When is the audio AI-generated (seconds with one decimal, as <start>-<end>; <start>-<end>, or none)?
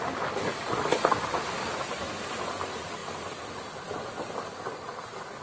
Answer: none